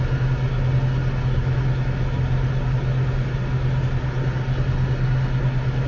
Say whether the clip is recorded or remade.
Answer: recorded